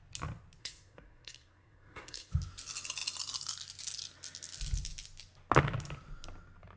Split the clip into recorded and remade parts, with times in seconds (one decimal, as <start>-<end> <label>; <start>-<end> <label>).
0.0-0.6 recorded; 0.6-2.3 remade; 2.3-6.8 recorded